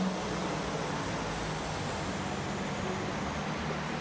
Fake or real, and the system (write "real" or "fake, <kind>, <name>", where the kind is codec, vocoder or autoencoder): real